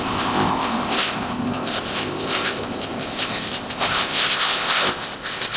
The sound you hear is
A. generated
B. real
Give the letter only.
A